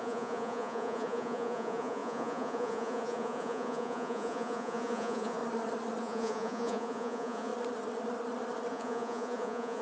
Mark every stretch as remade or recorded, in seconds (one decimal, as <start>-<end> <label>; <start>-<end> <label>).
0.0-5.4 remade; 5.4-6.0 recorded; 6.0-7.5 remade; 7.5-8.7 recorded; 8.7-9.8 remade

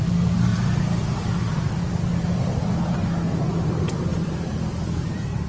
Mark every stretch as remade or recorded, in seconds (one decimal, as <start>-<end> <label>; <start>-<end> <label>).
0.0-5.5 recorded

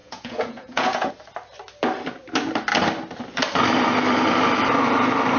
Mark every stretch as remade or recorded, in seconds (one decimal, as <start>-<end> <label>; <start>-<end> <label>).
0.0-1.1 remade; 1.1-5.4 recorded

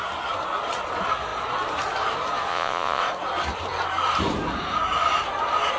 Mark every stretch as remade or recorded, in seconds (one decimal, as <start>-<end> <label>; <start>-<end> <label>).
0.0-2.5 recorded; 2.5-3.0 remade; 3.0-5.8 recorded

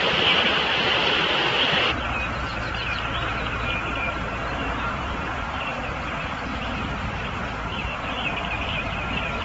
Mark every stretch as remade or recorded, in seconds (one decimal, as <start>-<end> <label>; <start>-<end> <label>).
0.0-9.4 recorded

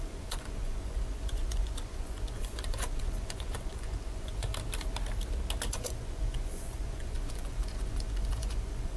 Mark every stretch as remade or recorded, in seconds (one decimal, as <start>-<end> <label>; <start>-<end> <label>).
0.0-4.5 remade; 4.5-5.7 recorded; 5.7-9.0 remade